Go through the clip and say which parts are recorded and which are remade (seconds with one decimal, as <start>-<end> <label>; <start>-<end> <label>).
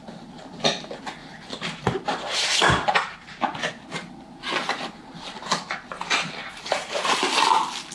0.0-1.2 recorded; 1.2-3.7 remade; 3.7-6.4 recorded; 6.4-7.2 remade; 7.2-7.9 recorded